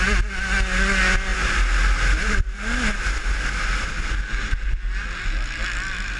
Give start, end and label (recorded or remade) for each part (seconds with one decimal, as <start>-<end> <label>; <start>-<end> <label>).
0.0-6.2 recorded